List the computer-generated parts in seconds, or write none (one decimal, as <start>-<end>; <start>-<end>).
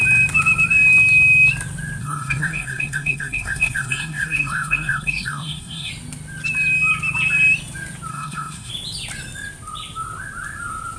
2.0-5.9; 8.1-8.7